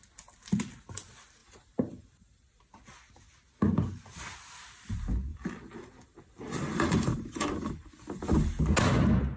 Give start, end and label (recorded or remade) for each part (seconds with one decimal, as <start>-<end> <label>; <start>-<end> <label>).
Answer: 0.0-1.4 recorded; 1.4-2.6 remade; 2.6-5.3 recorded; 5.3-8.5 remade; 8.5-9.4 recorded